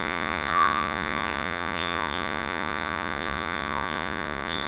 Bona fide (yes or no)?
no